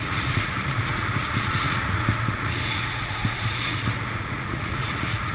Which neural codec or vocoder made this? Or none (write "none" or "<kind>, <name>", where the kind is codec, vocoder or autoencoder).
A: vocoder, Vocos